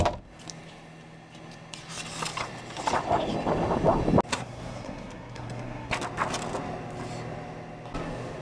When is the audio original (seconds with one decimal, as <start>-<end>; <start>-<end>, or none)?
0.0-4.3; 5.9-8.4